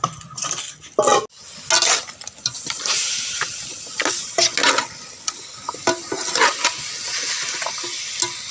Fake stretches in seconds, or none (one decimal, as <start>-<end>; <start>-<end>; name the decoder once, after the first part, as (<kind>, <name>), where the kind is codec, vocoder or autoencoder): none